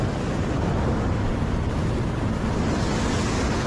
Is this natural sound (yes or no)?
yes